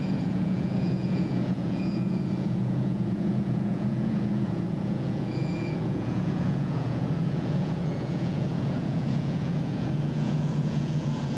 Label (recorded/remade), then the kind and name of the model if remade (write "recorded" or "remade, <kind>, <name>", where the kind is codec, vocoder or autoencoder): remade, vocoder, Vocos